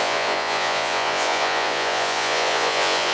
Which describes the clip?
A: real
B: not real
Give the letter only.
B